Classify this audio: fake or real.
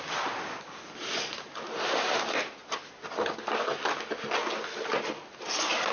real